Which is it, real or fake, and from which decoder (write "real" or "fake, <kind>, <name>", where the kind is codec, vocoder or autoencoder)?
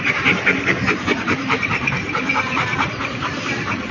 fake, vocoder, BigVGAN v2